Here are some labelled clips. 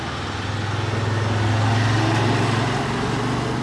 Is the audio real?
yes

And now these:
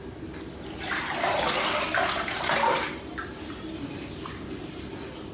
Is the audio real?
yes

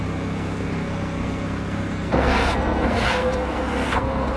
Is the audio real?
no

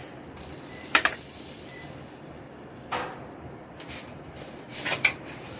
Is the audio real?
no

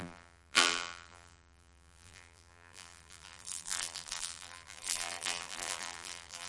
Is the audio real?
no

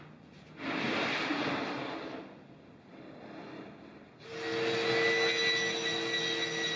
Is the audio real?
yes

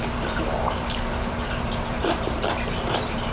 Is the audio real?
no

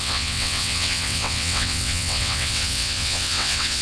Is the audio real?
no